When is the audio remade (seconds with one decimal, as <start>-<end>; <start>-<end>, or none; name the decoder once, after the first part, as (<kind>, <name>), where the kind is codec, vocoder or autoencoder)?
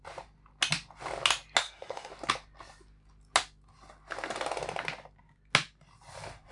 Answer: 1.6-2.1 (codec, SNAC)